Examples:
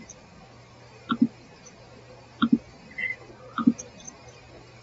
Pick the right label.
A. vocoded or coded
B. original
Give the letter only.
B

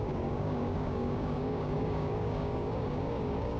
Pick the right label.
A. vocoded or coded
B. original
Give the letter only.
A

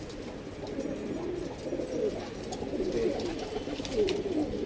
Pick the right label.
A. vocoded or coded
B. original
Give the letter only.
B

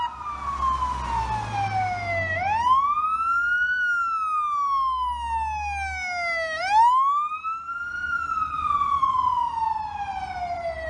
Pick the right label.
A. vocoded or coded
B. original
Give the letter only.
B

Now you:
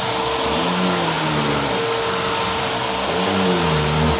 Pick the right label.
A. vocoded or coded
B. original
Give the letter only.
B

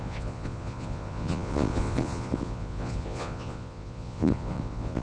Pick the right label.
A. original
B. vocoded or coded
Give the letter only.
B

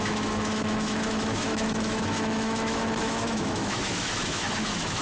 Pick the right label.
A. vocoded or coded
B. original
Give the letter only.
A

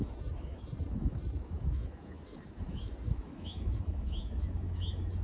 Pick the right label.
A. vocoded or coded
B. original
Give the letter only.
A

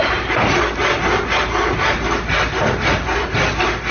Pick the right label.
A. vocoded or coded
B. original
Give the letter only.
B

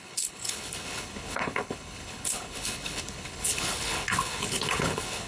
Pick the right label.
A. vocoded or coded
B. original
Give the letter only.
A